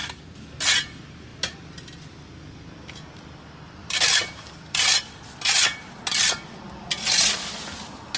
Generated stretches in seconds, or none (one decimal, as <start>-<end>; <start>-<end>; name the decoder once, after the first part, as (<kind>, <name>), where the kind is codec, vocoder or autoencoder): 0.0-0.5 (vocoder, BigVGAN v2); 3.8-6.6